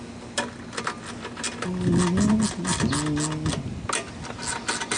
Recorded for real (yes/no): yes